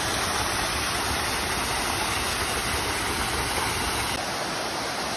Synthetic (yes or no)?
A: no